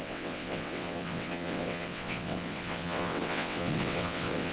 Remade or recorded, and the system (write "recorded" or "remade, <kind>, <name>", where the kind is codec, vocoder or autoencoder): remade, vocoder, WaveNeXt